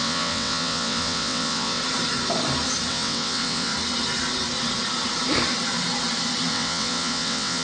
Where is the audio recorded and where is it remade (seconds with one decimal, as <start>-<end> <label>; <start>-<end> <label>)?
0.0-1.8 remade; 1.8-2.9 recorded; 2.9-3.7 remade; 3.7-6.5 recorded; 6.5-7.6 remade